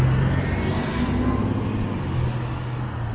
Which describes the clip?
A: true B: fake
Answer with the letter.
A